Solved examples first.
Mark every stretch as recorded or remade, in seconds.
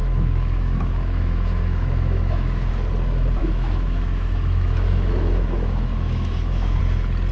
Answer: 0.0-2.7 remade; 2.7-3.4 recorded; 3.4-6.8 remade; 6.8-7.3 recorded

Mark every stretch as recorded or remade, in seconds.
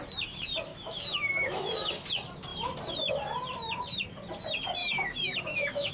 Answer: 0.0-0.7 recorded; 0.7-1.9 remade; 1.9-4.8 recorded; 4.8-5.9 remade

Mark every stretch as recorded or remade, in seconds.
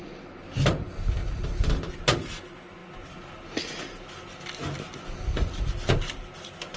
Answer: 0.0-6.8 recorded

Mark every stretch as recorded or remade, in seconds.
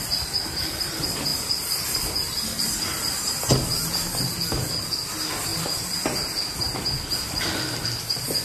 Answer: 0.0-8.4 recorded